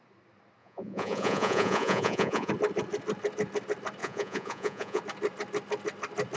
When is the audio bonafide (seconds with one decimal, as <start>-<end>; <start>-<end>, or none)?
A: 0.0-0.6; 2.5-4.0; 5.0-6.4